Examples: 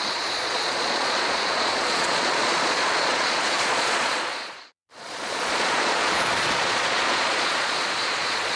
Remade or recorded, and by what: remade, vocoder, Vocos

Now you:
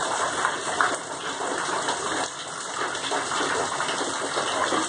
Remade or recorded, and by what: recorded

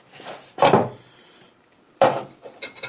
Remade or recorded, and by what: recorded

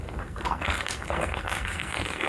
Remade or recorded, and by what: remade, codec, SNAC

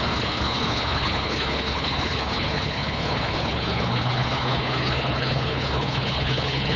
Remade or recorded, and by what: remade, codec, HILCodec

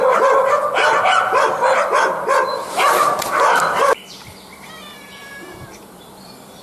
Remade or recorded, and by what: remade, vocoder, BigVGAN v2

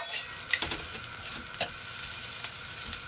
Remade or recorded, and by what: recorded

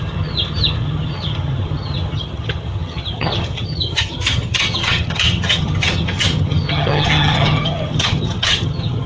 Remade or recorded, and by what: remade, vocoder, HiFi-GAN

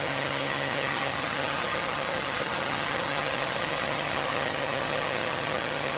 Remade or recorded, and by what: remade, vocoder, HiFi-GAN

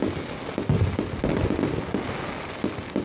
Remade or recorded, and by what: recorded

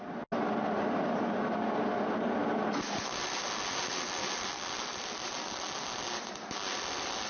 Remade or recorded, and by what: recorded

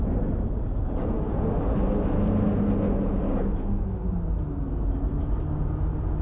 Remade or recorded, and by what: recorded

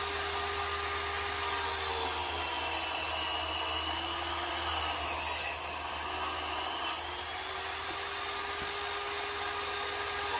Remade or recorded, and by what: recorded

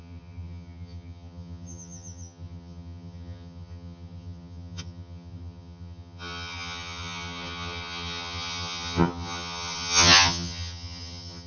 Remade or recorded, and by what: remade, vocoder, HiFi-GAN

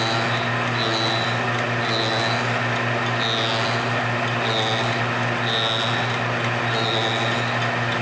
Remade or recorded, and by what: recorded